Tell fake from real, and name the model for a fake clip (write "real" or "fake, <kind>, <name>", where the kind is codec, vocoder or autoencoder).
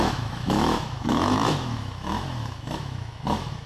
fake, autoencoder, DAC-VAE